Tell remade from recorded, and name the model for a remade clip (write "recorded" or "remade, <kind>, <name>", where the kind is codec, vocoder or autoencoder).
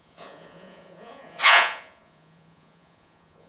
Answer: remade, vocoder, Vocos